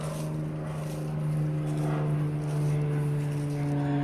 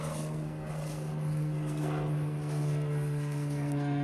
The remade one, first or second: second